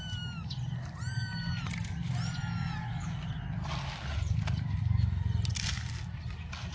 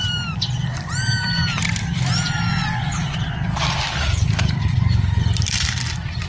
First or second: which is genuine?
first